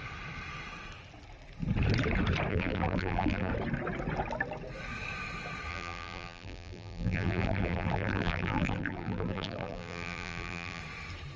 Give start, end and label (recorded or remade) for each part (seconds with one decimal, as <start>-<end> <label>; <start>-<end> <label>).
0.0-2.5 recorded; 2.5-3.5 remade; 3.5-5.7 recorded; 5.7-10.8 remade; 10.8-11.4 recorded